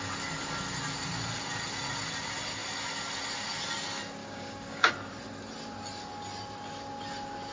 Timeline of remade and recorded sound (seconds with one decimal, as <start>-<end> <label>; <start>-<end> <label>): 0.0-4.2 recorded; 4.2-4.9 remade; 4.9-7.5 recorded